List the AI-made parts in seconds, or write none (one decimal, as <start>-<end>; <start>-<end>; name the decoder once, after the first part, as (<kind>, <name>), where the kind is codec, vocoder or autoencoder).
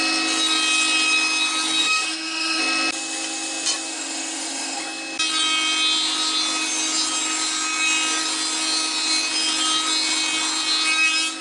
1.8-2.6 (autoencoder, DAC-VAE); 3.9-4.8